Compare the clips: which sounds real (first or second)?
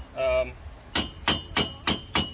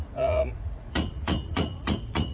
first